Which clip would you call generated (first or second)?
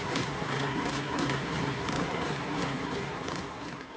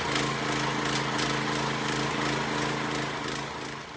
first